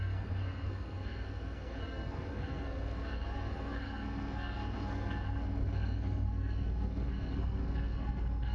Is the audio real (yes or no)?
no